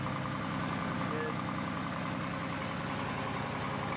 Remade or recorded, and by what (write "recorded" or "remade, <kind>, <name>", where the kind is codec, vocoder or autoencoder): recorded